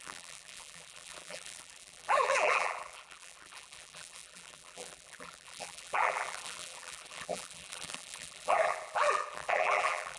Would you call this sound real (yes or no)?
no